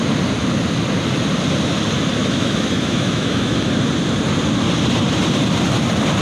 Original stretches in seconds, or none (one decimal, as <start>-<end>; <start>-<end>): 0.0-2.2; 3.7-6.2